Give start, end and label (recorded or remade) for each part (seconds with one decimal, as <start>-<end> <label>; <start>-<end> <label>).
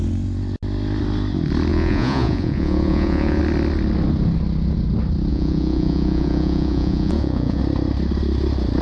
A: 0.0-1.7 recorded; 1.7-3.4 remade; 3.4-5.3 recorded; 5.3-7.6 remade; 7.6-8.8 recorded